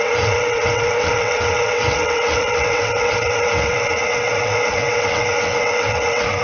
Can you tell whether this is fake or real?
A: fake